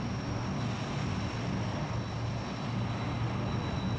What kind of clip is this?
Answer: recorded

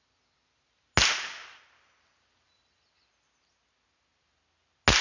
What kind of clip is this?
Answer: recorded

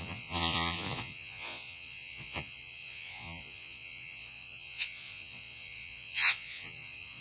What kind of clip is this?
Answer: remade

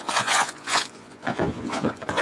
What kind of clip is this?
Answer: remade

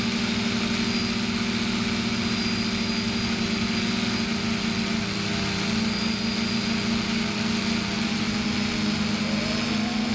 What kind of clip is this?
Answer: recorded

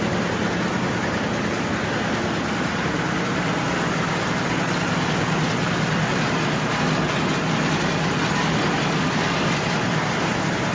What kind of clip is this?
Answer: recorded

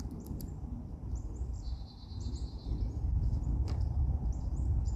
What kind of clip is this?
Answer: recorded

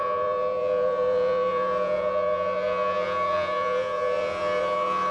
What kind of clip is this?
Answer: remade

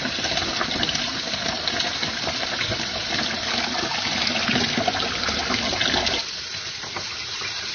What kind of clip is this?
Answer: recorded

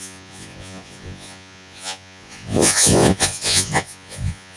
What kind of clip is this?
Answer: remade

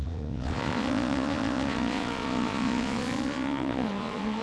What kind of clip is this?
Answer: remade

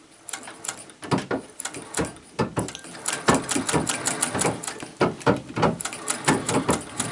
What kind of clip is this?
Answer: recorded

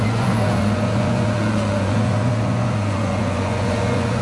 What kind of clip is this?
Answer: remade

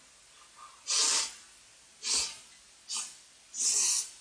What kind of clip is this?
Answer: recorded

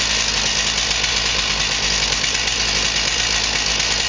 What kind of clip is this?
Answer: recorded